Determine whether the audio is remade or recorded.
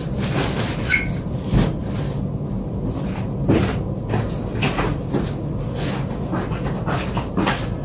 recorded